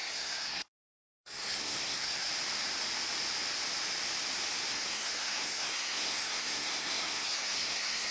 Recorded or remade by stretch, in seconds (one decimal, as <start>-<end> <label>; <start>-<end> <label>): 0.0-2.3 remade; 2.3-4.7 recorded; 4.7-8.1 remade